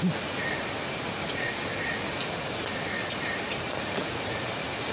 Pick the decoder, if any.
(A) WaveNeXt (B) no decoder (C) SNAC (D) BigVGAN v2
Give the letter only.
B